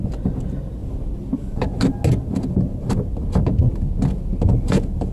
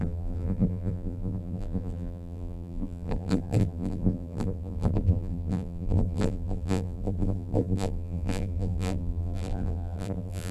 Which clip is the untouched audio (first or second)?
first